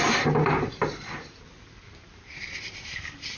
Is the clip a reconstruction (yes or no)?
yes